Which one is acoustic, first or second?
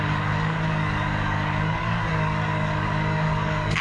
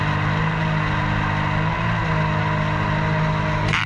second